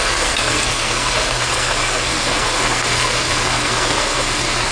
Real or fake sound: fake